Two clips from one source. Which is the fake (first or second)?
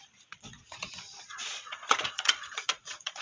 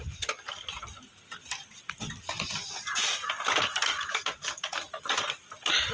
first